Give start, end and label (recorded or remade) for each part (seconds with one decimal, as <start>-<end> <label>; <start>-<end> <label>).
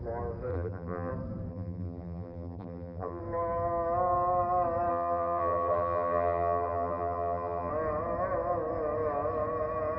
0.0-0.5 recorded; 0.5-1.1 remade; 1.1-1.5 recorded; 1.5-3.2 remade; 3.2-4.9 recorded; 4.9-7.7 remade; 7.7-10.0 recorded